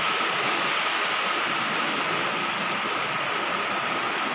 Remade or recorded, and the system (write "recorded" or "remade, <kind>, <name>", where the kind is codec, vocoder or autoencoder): recorded